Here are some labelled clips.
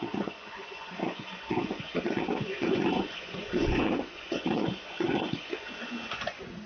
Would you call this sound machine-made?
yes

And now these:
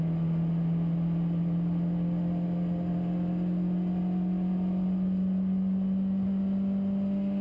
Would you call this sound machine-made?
no